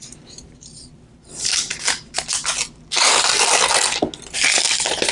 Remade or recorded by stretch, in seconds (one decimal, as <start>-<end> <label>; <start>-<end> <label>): 0.0-1.7 remade; 1.7-5.1 recorded